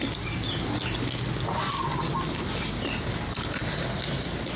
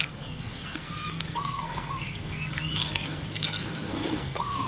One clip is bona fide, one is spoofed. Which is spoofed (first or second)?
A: second